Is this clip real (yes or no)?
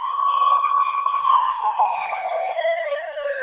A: no